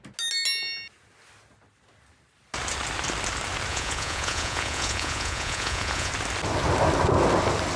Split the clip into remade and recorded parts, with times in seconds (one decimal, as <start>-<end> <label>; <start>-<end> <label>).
0.0-3.7 recorded; 3.7-6.1 remade; 6.1-7.8 recorded